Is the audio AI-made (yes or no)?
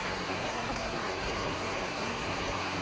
yes